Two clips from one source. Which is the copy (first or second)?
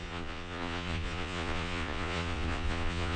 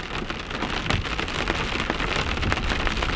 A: first